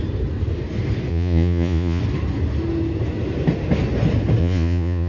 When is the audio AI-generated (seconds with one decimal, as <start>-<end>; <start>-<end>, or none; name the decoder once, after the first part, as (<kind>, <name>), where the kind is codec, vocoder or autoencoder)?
1.1-2.0 (vocoder, Vocos); 4.4-5.1